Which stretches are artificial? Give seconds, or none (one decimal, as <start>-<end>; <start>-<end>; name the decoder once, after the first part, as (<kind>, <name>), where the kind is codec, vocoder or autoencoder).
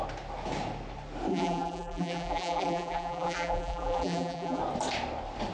1.3-4.6 (vocoder, BigVGAN v2)